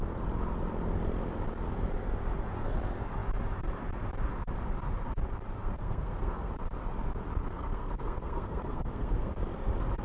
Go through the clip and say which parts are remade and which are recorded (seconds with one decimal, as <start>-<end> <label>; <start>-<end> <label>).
0.0-5.6 recorded; 5.6-6.5 remade; 6.5-7.4 recorded; 7.4-9.3 remade; 9.3-10.0 recorded